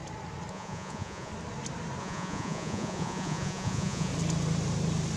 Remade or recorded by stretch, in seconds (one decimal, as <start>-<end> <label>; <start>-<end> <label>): 0.0-0.5 recorded; 0.5-1.3 remade; 1.3-2.0 recorded; 2.0-4.1 remade; 4.1-5.2 recorded